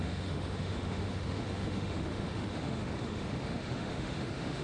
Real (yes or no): no